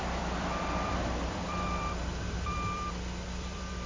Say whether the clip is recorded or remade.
remade